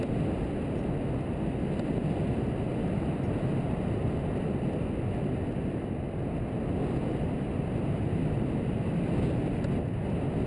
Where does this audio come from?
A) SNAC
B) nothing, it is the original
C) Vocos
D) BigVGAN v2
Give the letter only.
B